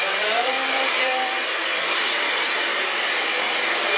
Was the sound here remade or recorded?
remade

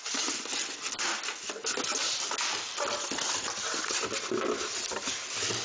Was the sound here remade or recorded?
recorded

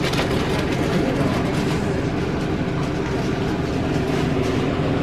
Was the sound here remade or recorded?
recorded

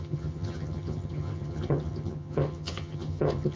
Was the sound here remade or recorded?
remade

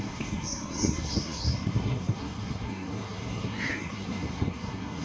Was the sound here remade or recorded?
remade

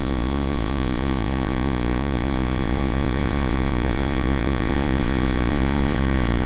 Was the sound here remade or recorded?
remade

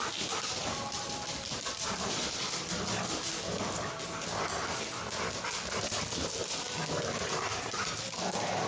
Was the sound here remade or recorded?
recorded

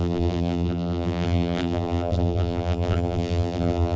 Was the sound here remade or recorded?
remade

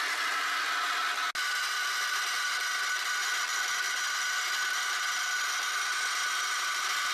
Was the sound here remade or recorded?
recorded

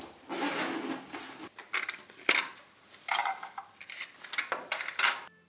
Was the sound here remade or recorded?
recorded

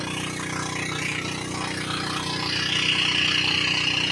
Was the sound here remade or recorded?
recorded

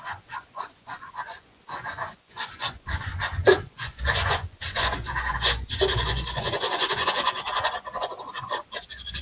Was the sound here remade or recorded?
remade